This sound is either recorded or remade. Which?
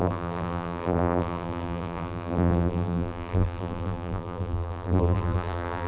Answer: remade